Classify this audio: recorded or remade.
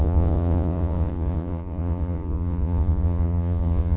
remade